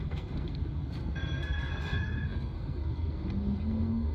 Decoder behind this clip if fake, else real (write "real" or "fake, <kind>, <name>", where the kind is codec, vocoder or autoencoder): fake, codec, SNAC